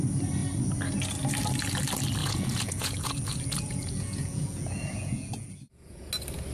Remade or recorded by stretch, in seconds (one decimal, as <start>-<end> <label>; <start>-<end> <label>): 0.0-2.2 recorded; 2.2-6.1 remade; 6.1-6.5 recorded

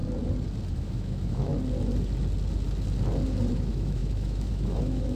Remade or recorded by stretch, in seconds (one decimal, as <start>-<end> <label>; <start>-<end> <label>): 0.0-0.7 recorded; 0.7-1.5 remade; 1.5-3.5 recorded; 3.5-5.2 remade

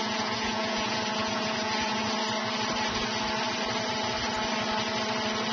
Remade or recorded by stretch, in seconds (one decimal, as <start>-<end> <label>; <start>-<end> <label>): 0.0-2.0 remade; 2.0-5.5 recorded

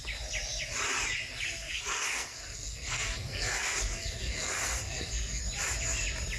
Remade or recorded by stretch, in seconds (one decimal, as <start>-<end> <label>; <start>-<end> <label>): 0.0-1.6 recorded; 1.6-5.4 remade; 5.4-6.4 recorded

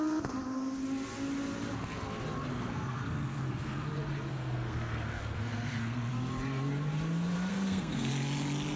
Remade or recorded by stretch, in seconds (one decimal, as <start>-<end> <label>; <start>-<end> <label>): 0.0-2.5 recorded; 2.5-3.9 remade; 3.9-4.3 recorded; 4.3-6.1 remade; 6.1-7.5 recorded; 7.5-8.1 remade; 8.1-8.8 recorded

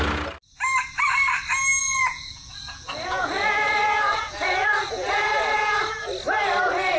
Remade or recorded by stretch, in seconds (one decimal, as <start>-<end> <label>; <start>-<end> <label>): 0.0-1.8 recorded; 1.8-6.0 remade; 6.0-7.0 recorded

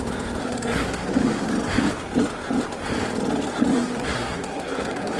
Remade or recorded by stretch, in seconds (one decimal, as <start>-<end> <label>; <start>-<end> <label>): 0.0-0.4 recorded; 0.4-1.5 remade; 1.5-3.7 recorded; 3.7-5.2 remade

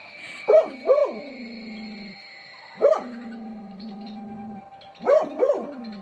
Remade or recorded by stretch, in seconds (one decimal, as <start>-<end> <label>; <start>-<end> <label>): 0.0-1.0 recorded; 1.0-4.6 remade; 4.6-6.0 recorded